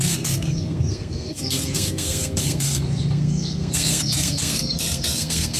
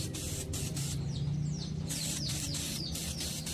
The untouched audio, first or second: second